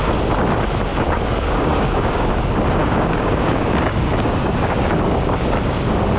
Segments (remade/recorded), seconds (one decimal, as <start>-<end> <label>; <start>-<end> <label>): 0.0-0.9 recorded; 0.9-2.3 remade; 2.3-2.8 recorded; 2.8-6.2 remade